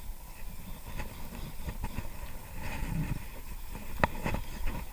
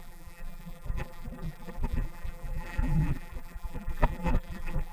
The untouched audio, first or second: first